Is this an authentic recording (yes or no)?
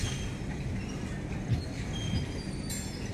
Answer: yes